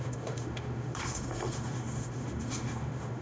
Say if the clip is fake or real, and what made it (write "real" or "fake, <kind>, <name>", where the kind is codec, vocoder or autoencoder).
fake, autoencoder, DAC-VAE